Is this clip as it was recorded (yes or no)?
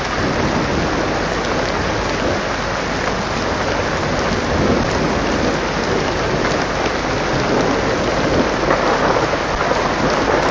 yes